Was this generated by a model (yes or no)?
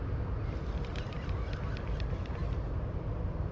no